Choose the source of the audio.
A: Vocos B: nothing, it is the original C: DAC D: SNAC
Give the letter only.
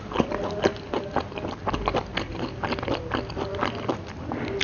B